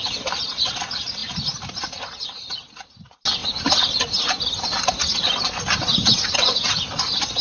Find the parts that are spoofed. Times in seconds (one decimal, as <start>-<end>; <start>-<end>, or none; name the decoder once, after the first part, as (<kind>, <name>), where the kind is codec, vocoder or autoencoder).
6.0-6.7 (vocoder, WaveNeXt)